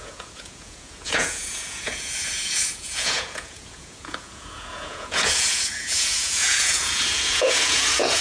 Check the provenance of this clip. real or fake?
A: fake